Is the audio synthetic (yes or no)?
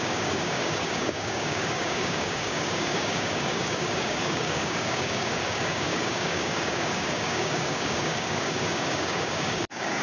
yes